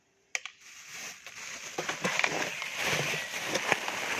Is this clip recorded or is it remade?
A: recorded